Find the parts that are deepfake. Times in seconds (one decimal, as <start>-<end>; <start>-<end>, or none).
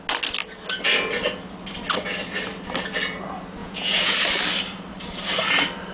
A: 3.6-4.1